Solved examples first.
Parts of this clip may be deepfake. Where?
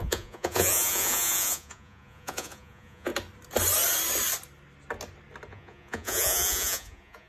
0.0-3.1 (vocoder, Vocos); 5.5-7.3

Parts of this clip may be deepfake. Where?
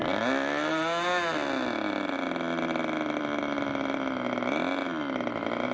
none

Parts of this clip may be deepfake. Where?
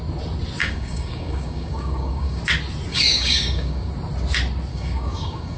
0.6-2.4 (codec, DAC); 2.9-3.9; 4.7-5.6